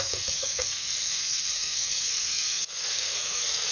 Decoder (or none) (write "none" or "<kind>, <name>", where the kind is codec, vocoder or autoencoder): codec, SNAC